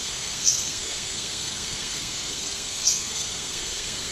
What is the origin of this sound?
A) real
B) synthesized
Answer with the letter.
B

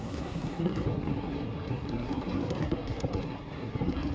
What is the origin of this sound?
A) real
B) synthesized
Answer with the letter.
B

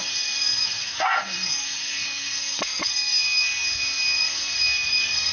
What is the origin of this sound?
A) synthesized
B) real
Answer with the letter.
A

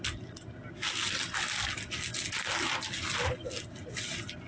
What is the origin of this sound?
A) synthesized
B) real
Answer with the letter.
B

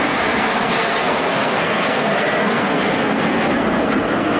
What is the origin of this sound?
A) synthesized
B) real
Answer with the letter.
A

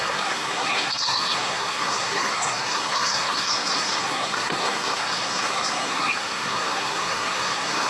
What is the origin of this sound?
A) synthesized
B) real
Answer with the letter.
A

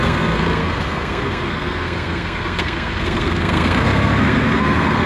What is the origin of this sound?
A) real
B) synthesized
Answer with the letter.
B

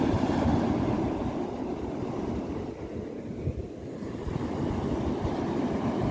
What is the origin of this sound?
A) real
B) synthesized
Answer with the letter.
A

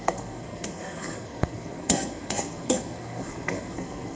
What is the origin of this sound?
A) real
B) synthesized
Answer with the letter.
B